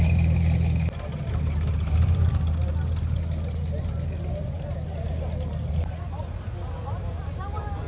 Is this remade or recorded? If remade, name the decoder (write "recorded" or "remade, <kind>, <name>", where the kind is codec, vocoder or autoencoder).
recorded